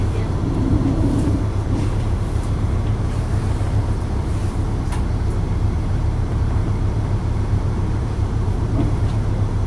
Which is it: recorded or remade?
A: remade